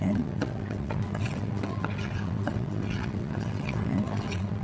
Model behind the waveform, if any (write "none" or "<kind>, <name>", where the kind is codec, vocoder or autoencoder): vocoder, WaveNeXt